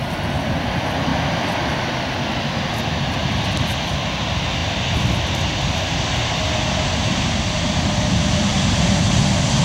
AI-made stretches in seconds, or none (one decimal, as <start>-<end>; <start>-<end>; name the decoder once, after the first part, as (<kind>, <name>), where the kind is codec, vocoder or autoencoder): none